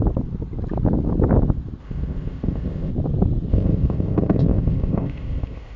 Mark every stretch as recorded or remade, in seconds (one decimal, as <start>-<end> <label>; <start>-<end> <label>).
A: 0.0-1.8 recorded; 1.8-2.9 remade; 2.9-3.5 recorded; 3.5-5.8 remade